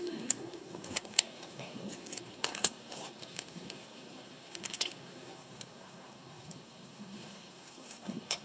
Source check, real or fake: fake